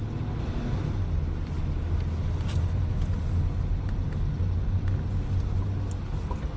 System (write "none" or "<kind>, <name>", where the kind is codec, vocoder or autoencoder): none